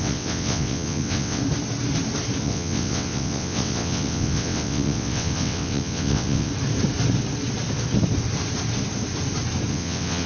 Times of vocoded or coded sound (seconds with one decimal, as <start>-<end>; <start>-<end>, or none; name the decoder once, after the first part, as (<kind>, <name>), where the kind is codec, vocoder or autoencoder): 0.0-1.4 (vocoder, WaveNeXt); 2.4-6.5; 9.7-10.3